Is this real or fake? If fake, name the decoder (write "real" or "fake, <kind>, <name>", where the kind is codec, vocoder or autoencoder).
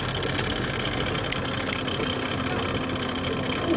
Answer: real